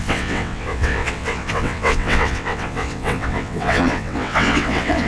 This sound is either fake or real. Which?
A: fake